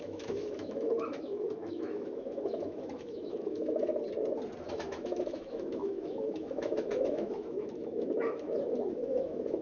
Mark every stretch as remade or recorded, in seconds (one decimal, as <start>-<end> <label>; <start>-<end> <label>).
0.0-3.9 remade; 3.9-4.7 recorded; 4.7-9.6 remade